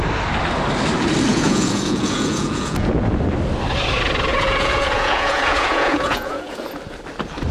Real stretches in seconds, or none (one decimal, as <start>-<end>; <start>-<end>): 0.0-1.3; 3.0-4.3; 6.7-7.5